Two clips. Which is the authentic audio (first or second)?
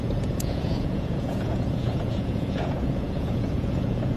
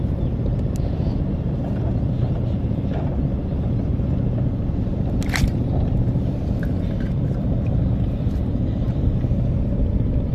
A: second